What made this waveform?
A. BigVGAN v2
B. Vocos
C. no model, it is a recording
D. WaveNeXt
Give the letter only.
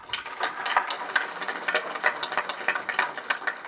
C